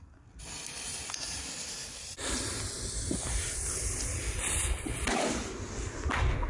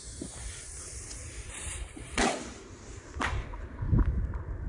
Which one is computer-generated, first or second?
second